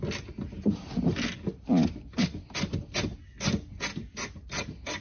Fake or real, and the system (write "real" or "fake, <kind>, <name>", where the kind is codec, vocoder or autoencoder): real